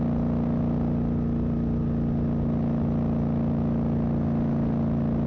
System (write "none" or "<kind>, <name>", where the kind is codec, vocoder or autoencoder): none